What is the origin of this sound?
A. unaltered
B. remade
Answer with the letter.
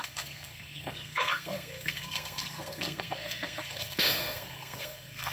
B